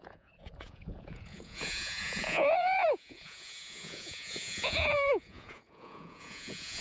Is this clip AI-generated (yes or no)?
yes